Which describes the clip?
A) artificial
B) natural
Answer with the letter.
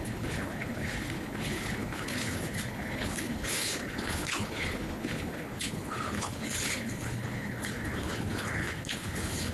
A